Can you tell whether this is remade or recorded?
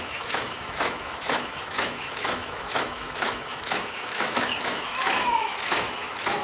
remade